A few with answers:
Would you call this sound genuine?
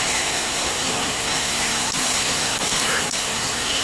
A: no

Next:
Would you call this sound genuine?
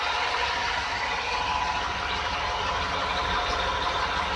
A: yes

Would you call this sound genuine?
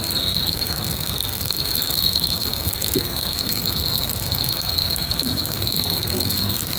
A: no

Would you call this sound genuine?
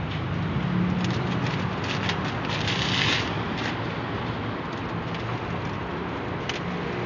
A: yes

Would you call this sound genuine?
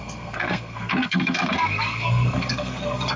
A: no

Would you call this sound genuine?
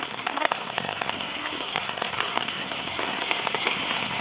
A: no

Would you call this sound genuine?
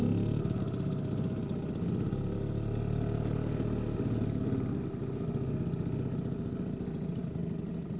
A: yes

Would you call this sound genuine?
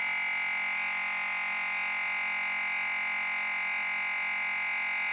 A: yes